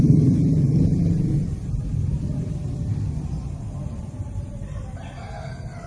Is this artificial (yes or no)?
yes